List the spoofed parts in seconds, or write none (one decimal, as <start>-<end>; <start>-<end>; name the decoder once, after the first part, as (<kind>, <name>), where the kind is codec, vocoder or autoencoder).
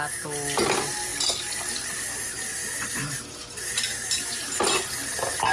none